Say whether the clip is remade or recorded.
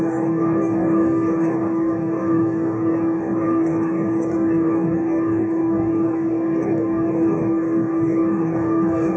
remade